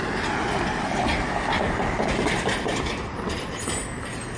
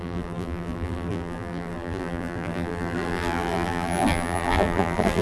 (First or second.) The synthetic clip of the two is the second